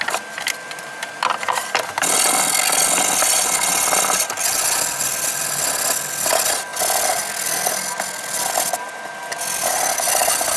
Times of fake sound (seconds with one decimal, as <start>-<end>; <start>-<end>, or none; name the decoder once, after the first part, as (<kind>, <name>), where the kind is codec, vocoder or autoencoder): none